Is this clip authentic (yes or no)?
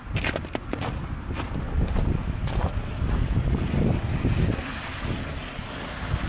yes